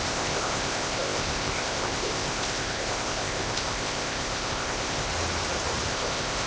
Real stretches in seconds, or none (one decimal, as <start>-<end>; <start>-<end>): 5.1-5.9